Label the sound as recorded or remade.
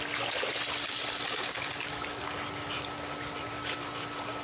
recorded